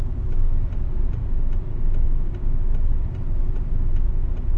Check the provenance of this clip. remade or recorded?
recorded